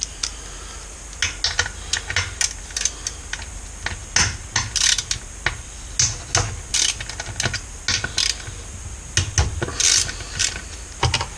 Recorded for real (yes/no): yes